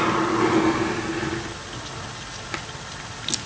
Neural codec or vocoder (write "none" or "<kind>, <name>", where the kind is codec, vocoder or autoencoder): none